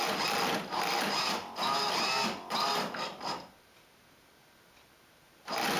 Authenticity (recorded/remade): recorded